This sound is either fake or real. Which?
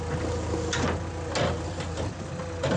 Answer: real